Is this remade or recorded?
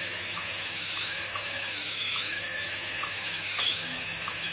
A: remade